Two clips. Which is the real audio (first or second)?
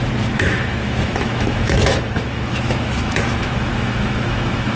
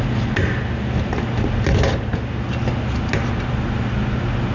second